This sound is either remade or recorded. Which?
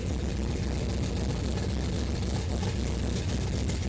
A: recorded